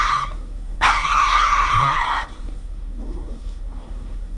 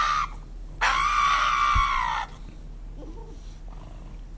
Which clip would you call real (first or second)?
second